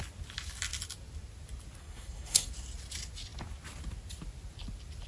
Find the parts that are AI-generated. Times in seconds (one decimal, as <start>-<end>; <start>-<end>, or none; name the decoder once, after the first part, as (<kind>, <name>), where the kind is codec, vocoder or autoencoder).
1.8-2.5 (codec, SNAC)